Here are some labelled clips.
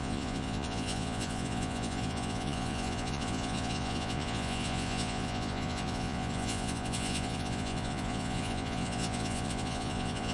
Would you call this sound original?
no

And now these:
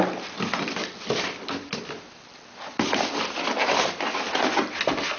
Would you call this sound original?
yes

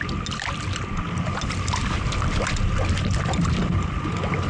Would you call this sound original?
yes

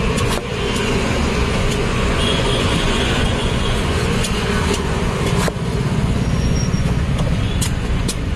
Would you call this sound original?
no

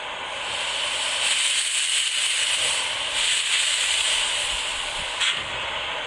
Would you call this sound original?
yes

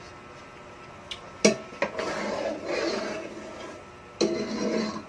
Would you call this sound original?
yes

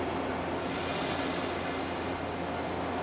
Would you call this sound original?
yes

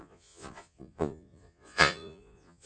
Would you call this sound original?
no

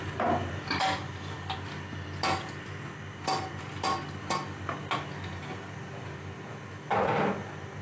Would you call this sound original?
yes